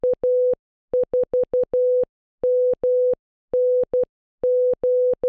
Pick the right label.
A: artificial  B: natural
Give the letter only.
B